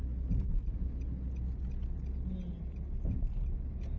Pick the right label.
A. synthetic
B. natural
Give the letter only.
B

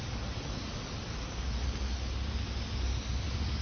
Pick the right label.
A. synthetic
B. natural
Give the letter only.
B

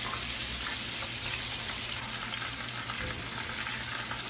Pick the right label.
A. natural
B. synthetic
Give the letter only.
A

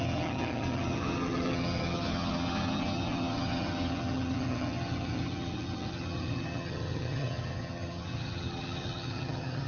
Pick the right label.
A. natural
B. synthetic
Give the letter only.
B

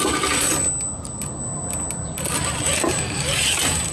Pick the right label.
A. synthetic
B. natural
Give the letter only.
B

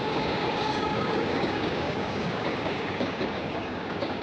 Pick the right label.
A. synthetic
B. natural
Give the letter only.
A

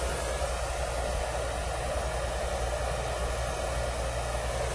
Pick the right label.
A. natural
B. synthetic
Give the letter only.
A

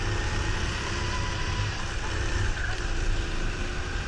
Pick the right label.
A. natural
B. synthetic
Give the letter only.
A